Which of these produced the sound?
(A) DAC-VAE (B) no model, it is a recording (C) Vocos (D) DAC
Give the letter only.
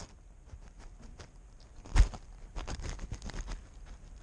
B